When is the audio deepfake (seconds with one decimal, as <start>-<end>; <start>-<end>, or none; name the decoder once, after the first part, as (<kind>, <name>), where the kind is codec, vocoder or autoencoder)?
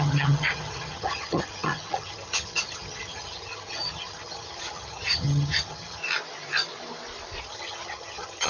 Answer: 0.0-6.0 (vocoder, HiFi-GAN); 7.4-8.5